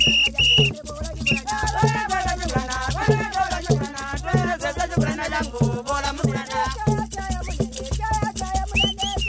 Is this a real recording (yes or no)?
yes